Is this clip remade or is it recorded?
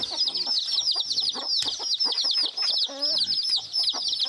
recorded